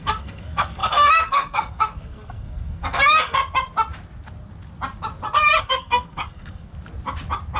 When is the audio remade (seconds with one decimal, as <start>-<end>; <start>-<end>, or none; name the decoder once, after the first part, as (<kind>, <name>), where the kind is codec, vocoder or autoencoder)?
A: 0.0-3.4 (codec, SNAC); 5.6-6.7